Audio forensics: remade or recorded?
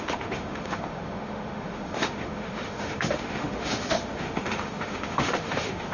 remade